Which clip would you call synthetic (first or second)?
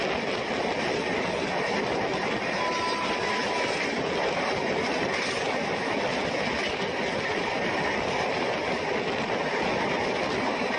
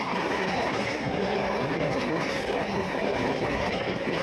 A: second